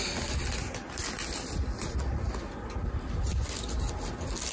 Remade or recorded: recorded